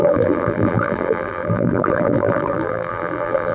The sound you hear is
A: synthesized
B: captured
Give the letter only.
A